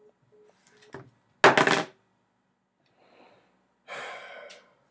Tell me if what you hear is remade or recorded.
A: recorded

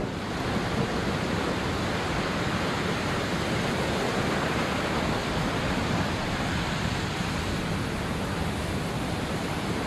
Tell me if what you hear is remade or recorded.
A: remade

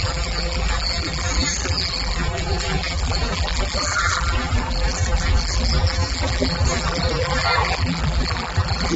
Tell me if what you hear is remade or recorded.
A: remade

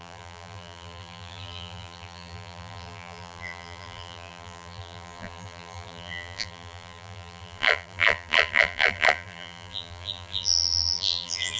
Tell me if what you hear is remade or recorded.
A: remade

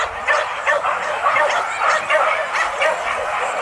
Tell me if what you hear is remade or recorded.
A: remade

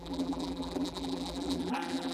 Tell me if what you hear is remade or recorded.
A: remade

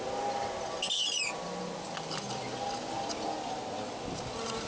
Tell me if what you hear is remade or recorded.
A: recorded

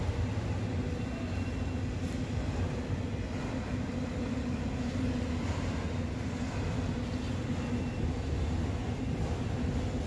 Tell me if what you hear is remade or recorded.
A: recorded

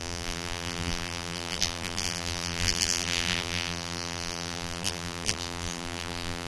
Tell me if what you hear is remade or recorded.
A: remade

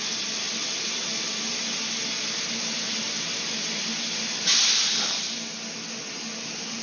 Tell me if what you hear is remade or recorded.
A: recorded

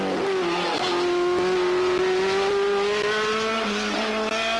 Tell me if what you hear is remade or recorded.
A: recorded